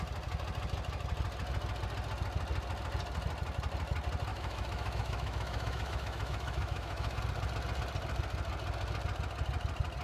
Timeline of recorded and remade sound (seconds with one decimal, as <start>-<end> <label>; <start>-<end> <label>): 0.0-4.3 recorded; 4.3-7.2 remade; 7.2-10.0 recorded